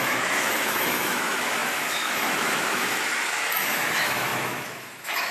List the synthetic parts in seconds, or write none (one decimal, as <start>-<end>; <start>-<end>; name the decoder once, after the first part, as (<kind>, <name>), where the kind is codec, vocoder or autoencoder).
0.0-5.3 (autoencoder, DAC-VAE)